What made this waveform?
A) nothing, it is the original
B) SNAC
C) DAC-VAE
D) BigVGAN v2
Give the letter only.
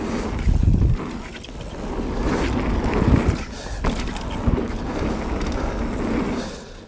A